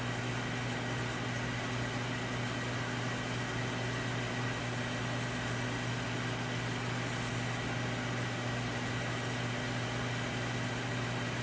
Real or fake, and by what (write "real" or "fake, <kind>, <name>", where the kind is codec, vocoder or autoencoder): real